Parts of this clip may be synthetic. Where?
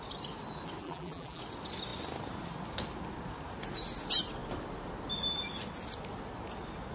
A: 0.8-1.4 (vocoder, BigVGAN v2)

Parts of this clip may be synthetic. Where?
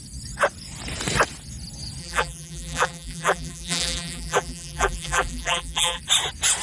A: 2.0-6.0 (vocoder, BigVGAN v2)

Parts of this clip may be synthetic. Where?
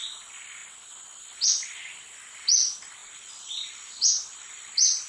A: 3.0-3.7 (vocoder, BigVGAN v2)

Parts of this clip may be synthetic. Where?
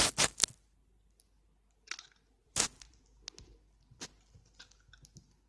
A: 2.4-3.0 (vocoder, BigVGAN v2)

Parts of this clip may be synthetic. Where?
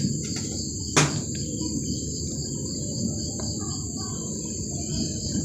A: none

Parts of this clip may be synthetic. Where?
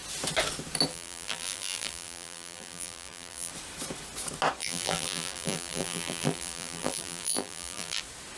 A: 0.9-3.5 (vocoder, BigVGAN v2); 4.6-8.0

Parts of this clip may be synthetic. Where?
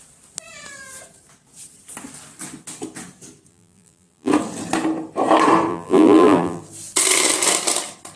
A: 3.5-4.3 (vocoder, BigVGAN v2); 5.7-6.6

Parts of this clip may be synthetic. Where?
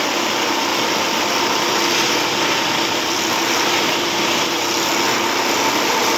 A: 0.7-2.6 (vocoder, BigVGAN v2)